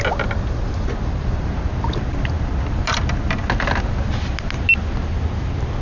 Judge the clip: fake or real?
real